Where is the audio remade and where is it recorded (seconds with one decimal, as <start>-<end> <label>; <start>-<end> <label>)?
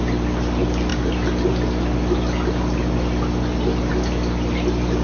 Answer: 0.0-5.0 recorded